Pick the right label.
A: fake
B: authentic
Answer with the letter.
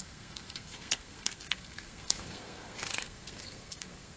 A